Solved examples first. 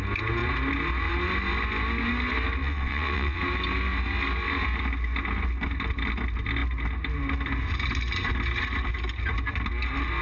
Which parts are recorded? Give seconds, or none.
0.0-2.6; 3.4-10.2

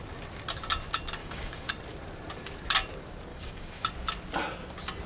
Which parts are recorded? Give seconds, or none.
0.0-1.2; 1.7-3.3; 3.9-5.1

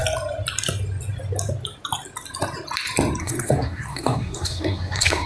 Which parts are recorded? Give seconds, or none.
0.0-3.2

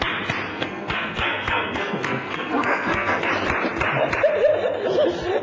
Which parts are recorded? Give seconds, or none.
0.0-0.5; 3.3-5.4

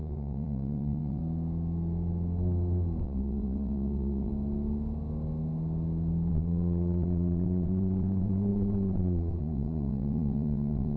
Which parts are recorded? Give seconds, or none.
1.2-3.0; 4.3-6.3

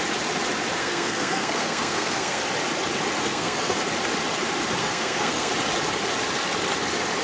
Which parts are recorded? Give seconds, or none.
0.0-0.8; 2.4-3.2; 3.8-4.8; 5.5-7.2